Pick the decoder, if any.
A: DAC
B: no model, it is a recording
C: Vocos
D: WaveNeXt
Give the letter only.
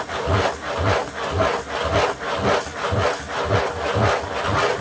B